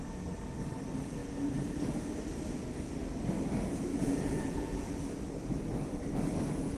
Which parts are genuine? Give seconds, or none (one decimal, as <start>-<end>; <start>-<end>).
0.0-3.9; 4.9-6.8